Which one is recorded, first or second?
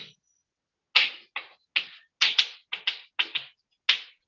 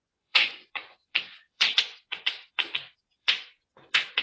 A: first